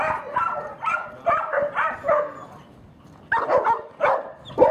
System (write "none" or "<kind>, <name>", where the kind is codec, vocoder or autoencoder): none